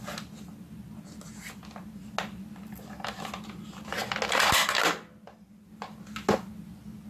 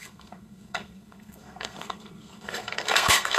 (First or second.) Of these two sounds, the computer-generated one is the second